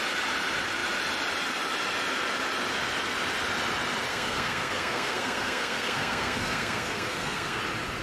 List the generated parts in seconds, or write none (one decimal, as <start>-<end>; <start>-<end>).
4.1-7.6